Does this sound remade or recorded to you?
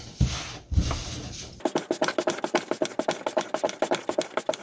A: recorded